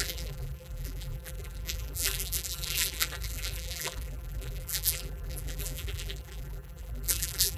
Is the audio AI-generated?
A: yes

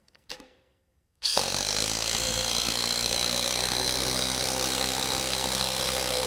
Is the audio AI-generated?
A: yes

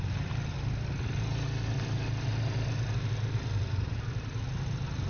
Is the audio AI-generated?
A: no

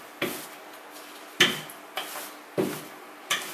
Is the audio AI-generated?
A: no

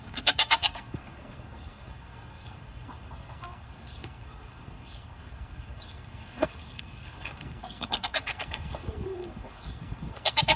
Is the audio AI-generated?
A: yes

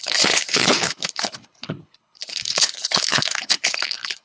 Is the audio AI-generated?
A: yes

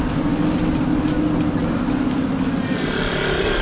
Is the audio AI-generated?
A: no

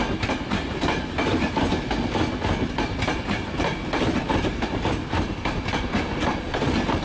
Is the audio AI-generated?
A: no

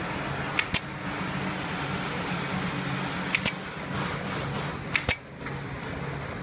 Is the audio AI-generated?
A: no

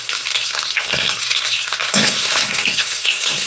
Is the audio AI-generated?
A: yes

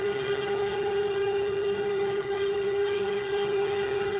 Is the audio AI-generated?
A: yes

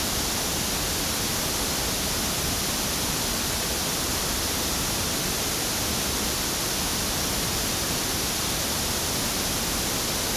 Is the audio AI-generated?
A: no